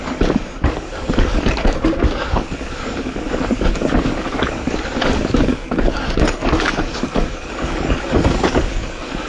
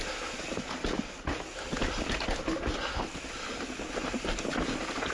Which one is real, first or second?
second